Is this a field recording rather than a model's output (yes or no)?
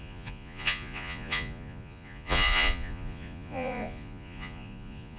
no